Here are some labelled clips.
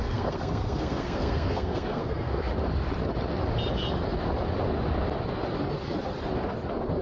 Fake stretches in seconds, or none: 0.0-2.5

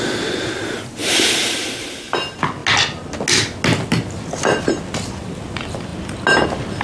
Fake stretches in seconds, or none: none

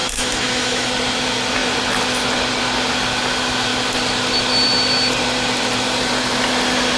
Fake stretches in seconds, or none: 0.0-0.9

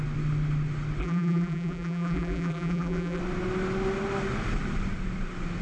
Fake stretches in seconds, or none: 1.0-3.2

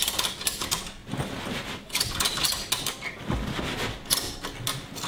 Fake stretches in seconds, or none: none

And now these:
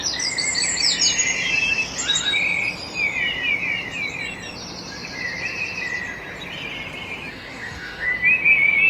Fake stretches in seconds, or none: 7.3-8.1